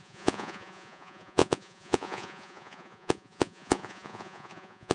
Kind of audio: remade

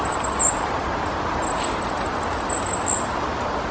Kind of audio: recorded